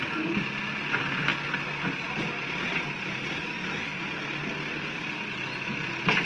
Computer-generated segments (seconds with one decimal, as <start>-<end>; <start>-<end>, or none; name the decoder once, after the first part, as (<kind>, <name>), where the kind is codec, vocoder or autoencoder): none